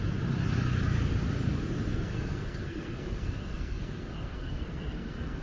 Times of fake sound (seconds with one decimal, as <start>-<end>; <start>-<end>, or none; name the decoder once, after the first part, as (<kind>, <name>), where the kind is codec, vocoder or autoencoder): 1.9-5.4 (codec, SNAC)